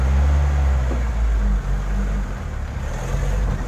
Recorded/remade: recorded